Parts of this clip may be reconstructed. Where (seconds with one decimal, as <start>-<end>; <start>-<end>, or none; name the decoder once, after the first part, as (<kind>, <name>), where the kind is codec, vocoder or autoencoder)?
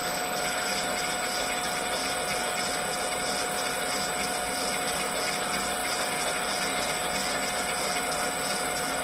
none